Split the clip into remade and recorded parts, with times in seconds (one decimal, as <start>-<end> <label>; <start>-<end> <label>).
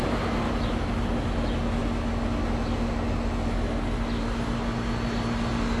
0.0-5.8 recorded